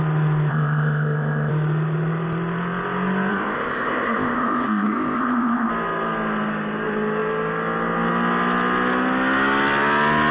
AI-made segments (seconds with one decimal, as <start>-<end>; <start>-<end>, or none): 0.5-1.5; 3.3-5.7